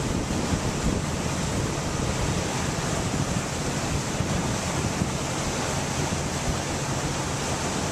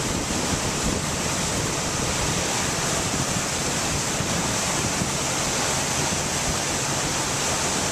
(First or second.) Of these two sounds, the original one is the first